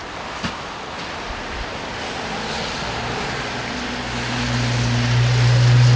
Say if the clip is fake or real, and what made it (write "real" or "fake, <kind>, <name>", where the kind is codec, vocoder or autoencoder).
real